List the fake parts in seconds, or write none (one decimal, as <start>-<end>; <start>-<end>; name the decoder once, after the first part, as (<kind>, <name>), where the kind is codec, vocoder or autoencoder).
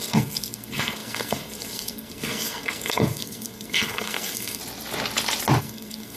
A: 0.0-4.6 (codec, SNAC); 5.6-6.2